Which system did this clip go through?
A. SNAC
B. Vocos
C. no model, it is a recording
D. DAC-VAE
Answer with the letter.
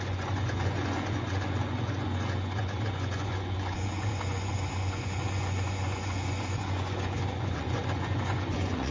B